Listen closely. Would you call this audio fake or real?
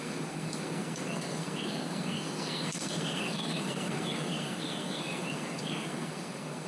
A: fake